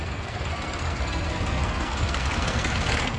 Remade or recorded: remade